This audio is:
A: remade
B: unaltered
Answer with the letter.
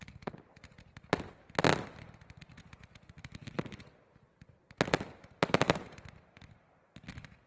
B